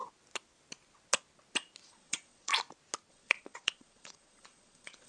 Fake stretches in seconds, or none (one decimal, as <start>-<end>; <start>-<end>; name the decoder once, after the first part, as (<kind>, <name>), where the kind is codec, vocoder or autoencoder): 1.9-2.5 (vocoder, Vocos); 3.1-5.1